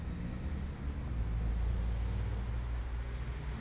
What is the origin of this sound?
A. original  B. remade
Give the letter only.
A